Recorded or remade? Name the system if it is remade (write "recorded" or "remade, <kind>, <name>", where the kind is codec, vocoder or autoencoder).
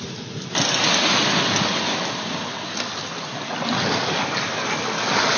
recorded